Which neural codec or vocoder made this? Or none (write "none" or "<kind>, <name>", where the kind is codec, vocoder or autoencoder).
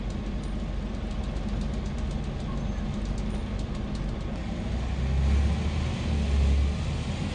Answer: none